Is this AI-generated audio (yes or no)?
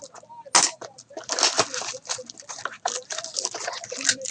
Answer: no